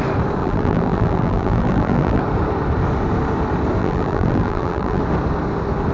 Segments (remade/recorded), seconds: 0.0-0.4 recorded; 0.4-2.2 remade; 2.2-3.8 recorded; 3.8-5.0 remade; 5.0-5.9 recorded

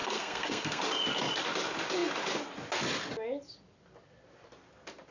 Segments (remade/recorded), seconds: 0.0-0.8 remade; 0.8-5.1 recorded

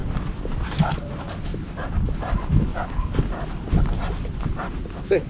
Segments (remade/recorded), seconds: 0.0-0.9 remade; 0.9-2.7 recorded; 2.7-4.6 remade; 4.6-5.3 recorded